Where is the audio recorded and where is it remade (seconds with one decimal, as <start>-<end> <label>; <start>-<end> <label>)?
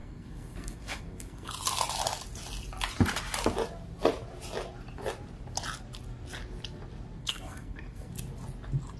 0.0-1.5 remade; 1.5-7.2 recorded; 7.2-8.1 remade; 8.1-9.0 recorded